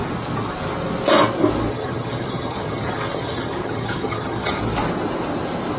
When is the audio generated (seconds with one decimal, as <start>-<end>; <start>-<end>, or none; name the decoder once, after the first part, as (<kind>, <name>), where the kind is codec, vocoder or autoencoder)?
1.7-4.6 (vocoder, HiFi-GAN)

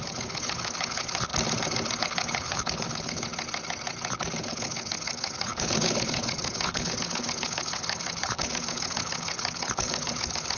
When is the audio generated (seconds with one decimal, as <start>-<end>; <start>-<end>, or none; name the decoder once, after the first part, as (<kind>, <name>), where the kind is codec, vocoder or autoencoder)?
0.0-1.3 (codec, HILCodec); 2.0-3.3; 4.4-10.6

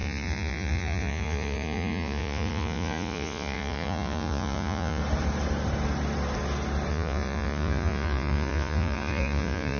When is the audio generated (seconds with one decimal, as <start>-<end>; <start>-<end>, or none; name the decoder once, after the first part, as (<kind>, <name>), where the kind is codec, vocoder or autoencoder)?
0.0-5.0 (vocoder, Vocos); 6.9-9.8

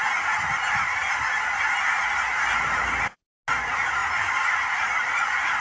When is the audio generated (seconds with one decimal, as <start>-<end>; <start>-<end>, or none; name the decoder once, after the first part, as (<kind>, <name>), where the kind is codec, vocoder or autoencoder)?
none

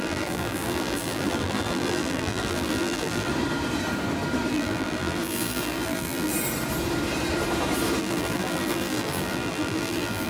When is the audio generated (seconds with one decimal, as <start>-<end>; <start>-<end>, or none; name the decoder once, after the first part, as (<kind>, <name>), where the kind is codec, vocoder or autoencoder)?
0.0-3.3 (vocoder, BigVGAN v2); 4.5-6.3; 8.0-10.3

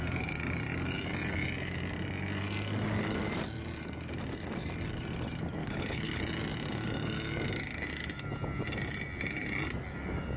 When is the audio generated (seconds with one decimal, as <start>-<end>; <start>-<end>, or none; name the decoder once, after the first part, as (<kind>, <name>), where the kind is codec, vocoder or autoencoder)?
5.6-6.2 (codec, HILCodec)